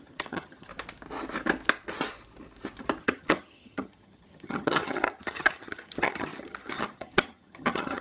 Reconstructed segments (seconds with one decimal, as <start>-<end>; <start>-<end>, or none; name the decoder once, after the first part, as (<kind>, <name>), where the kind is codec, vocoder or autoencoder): 0.0-0.7 (vocoder, HiFi-GAN); 3.0-8.0